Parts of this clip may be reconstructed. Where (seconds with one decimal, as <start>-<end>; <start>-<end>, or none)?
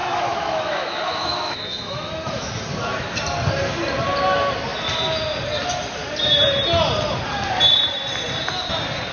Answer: 0.0-2.5